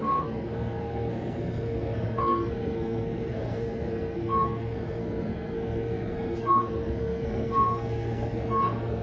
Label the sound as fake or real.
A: fake